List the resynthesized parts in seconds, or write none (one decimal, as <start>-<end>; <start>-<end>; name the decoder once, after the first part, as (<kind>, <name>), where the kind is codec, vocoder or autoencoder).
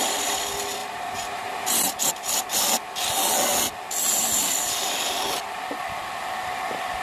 0.8-2.1 (vocoder, BigVGAN v2)